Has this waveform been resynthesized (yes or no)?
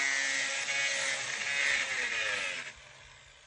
no